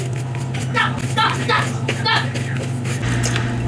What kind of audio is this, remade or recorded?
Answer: recorded